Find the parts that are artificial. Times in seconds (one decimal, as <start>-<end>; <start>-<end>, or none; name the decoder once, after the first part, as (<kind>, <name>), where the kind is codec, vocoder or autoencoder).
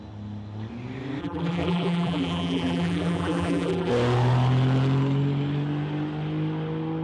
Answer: 1.2-3.9 (vocoder, BigVGAN v2)